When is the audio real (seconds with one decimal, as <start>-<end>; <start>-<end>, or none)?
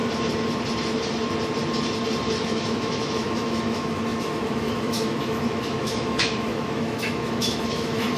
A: 0.0-2.4